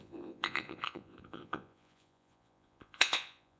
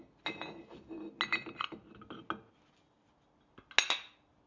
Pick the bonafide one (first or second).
second